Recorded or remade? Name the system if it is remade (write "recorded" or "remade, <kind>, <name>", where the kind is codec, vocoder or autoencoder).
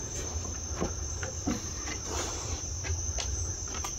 remade, vocoder, BigVGAN v2